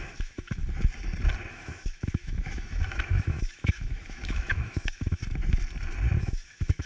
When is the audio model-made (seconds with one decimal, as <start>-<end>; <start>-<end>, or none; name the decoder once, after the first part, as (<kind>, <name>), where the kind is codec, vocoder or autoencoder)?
0.0-0.6 (autoencoder, DAC-VAE); 1.5-5.2; 6.2-6.9